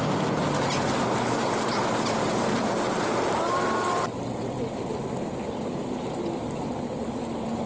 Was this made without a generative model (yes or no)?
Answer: yes